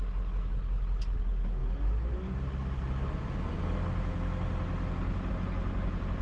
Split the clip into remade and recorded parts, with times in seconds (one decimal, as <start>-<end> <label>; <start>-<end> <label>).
0.0-6.2 recorded